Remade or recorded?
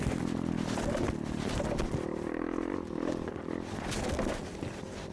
recorded